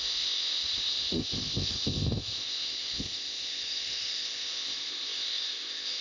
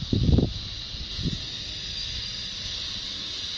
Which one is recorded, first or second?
second